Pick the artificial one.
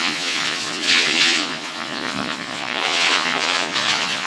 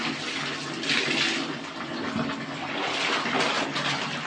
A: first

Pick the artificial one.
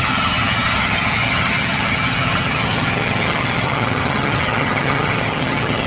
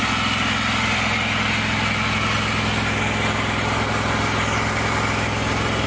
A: first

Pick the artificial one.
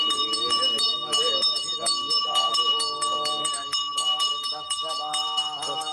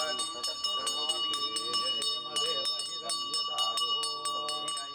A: first